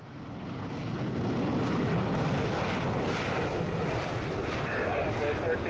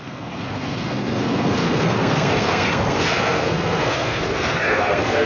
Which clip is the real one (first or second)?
first